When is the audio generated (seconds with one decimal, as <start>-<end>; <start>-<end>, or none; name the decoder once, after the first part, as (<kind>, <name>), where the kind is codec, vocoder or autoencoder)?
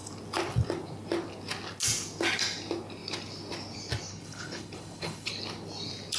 4.1-5.3 (codec, HILCodec)